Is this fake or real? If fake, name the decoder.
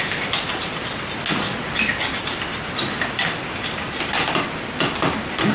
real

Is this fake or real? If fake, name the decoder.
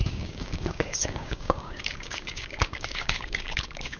fake, codec, DAC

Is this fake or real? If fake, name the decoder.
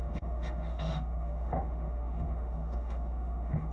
fake, autoencoder, DAC-VAE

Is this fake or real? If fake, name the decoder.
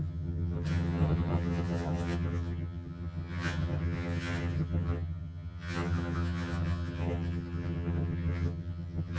fake, vocoder, HiFi-GAN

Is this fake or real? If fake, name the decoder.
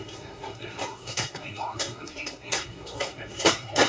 fake, codec, SNAC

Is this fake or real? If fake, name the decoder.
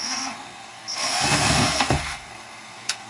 fake, codec, SNAC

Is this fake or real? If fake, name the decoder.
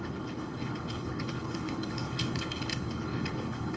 fake, codec, HILCodec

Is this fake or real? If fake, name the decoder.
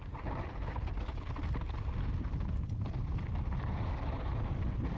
real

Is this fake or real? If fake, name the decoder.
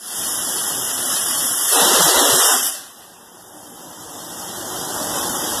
fake, vocoder, BigVGAN v2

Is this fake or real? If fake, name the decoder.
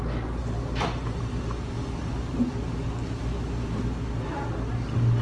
real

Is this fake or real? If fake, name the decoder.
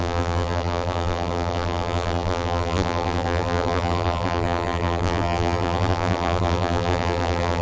fake, vocoder, BigVGAN v2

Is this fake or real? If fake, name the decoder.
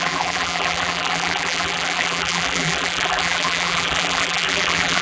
fake, vocoder, BigVGAN v2